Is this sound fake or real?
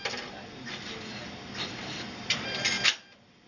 real